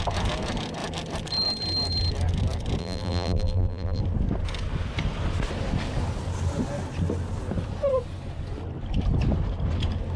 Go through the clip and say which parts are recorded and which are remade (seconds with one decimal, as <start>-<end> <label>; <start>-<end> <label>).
0.0-2.8 recorded; 2.8-4.0 remade; 4.0-10.2 recorded